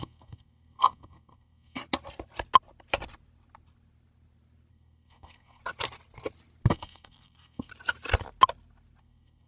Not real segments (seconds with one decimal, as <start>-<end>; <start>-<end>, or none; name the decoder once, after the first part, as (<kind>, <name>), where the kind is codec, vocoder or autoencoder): 0.0-1.8 (codec, SNAC); 4.7-5.6; 6.7-7.7; 9.0-9.5